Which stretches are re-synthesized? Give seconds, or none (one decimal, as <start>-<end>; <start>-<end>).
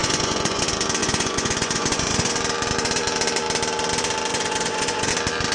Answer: 0.0-0.6; 1.0-2.3; 4.3-5.1